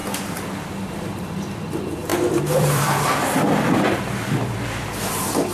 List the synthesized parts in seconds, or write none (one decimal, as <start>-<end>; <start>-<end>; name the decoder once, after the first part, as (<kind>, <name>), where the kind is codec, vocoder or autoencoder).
0.7-5.5 (vocoder, BigVGAN v2)